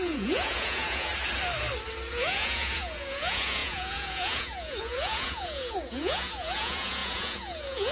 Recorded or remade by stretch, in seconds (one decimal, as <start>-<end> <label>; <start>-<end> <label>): 0.0-1.1 remade; 1.1-2.1 recorded; 2.1-7.9 remade